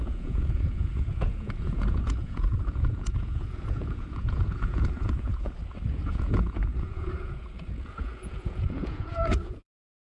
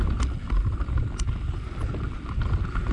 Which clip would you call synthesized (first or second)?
first